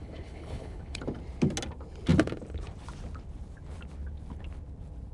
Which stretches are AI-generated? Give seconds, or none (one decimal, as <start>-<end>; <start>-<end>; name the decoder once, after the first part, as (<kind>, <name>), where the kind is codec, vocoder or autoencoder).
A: 0.0-1.0 (codec, HILCodec)